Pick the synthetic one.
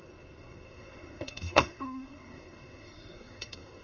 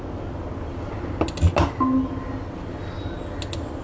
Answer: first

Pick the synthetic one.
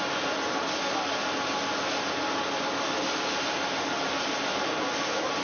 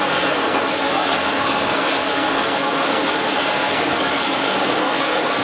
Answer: second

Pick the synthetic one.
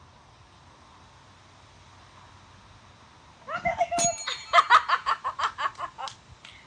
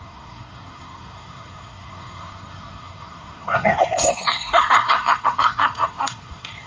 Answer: second